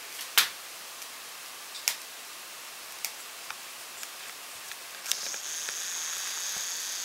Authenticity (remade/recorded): recorded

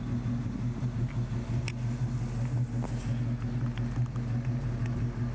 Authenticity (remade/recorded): recorded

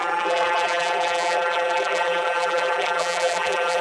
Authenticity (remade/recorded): remade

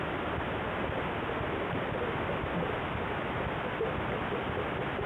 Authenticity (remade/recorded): recorded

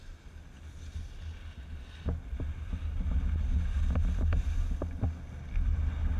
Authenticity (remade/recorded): recorded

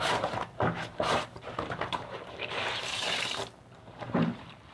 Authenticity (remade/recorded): remade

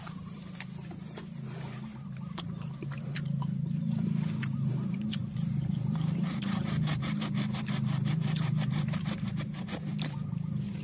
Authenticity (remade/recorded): remade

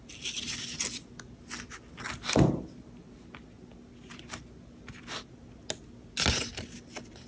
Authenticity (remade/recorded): recorded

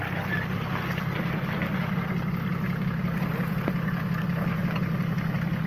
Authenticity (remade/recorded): recorded